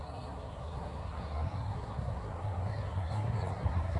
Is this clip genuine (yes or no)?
no